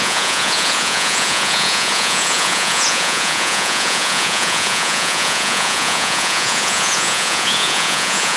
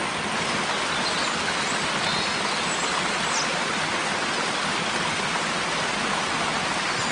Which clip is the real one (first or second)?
second